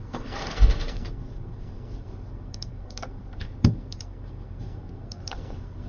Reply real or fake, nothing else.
fake